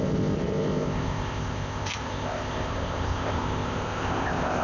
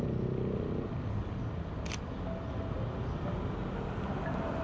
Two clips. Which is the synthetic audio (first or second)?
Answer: first